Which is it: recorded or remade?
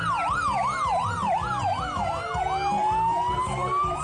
recorded